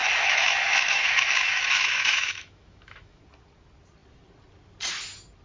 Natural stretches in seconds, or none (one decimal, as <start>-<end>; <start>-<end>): 3.2-5.4